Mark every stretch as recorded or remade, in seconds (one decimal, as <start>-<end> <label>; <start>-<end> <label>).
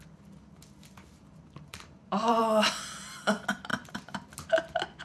0.0-1.7 recorded; 1.7-2.4 remade; 2.4-3.7 recorded; 3.7-4.3 remade; 4.3-5.0 recorded